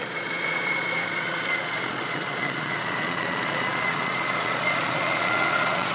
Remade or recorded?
remade